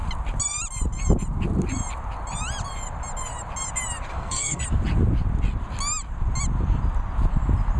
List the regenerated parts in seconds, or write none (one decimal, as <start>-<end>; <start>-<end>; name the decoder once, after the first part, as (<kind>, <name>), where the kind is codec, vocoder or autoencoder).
4.1-4.6 (codec, SNAC)

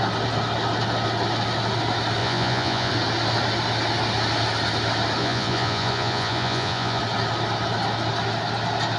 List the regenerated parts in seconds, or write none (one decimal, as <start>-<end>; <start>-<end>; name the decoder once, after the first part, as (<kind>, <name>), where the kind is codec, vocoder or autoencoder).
2.2-2.9 (vocoder, Vocos); 5.2-7.0

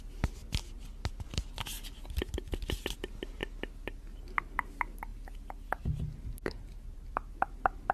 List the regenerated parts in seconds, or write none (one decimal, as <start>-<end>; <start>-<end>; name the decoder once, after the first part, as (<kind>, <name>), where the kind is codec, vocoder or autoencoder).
none

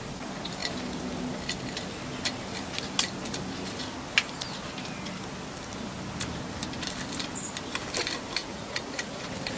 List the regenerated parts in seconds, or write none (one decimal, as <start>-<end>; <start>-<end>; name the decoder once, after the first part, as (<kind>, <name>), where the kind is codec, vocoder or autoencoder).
8.4-9.2 (vocoder, Vocos)

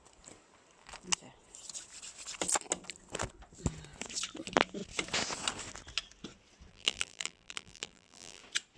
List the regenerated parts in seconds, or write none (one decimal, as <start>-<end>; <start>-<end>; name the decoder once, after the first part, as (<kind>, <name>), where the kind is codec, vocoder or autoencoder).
6.7-8.4 (vocoder, BigVGAN v2)

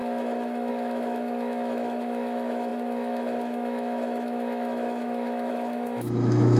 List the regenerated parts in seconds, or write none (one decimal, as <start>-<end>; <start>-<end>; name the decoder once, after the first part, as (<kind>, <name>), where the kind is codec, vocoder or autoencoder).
0.0-6.6 (autoencoder, DAC-VAE)